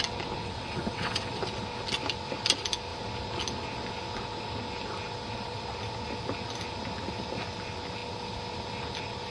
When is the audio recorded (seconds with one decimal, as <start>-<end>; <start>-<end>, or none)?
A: 0.0-0.4; 1.4-9.3